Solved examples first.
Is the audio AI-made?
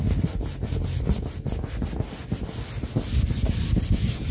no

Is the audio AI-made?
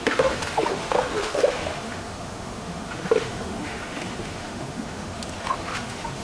yes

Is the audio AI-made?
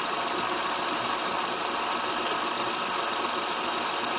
no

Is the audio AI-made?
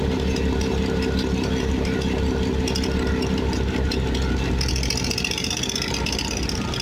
no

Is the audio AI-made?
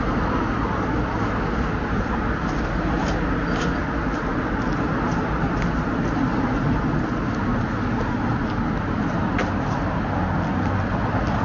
no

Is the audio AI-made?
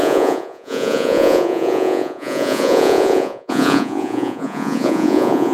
yes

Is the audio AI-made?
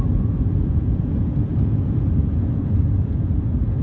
yes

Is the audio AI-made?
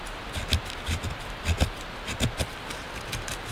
no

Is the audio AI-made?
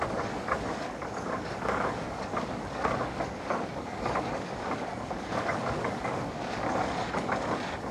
yes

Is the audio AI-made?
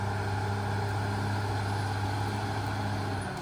no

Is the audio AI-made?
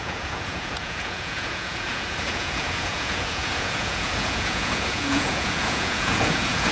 yes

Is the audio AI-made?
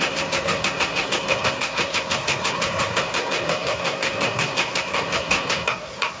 yes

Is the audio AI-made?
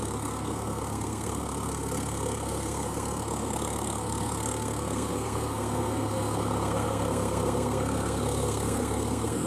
yes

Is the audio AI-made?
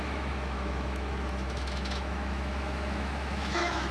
yes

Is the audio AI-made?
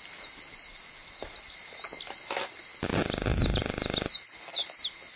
no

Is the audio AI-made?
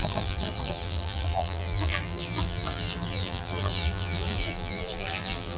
yes